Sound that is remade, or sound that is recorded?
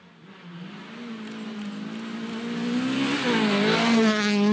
recorded